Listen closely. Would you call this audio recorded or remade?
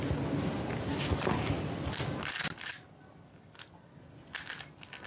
recorded